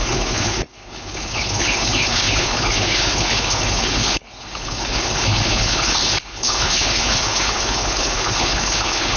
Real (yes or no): no